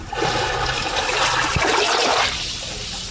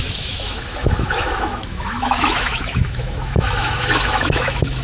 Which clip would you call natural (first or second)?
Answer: first